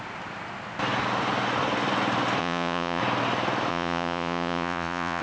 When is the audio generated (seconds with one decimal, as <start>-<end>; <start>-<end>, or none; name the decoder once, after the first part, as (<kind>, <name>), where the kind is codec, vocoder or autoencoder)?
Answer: 2.4-3.0 (vocoder, Vocos); 3.7-5.2